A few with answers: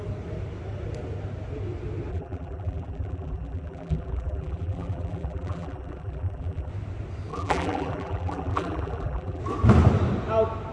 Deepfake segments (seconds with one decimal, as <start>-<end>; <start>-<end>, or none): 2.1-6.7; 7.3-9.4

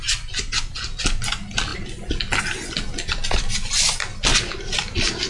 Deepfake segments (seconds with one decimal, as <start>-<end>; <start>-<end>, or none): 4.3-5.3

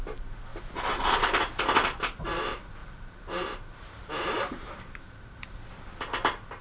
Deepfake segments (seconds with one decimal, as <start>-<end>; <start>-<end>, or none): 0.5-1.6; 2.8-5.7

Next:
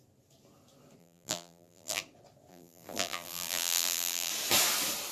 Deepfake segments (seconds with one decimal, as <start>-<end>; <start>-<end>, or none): 1.0-2.0; 2.5-4.3

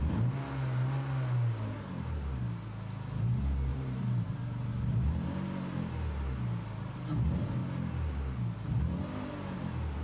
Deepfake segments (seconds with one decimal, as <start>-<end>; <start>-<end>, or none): 3.7-4.7

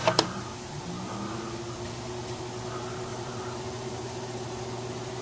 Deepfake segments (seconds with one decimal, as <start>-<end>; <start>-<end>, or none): 0.0-0.8; 3.1-4.6

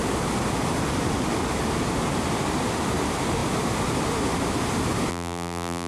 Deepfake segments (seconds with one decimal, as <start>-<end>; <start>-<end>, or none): 5.1-5.9